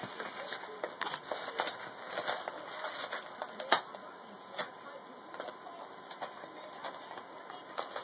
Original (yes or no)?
yes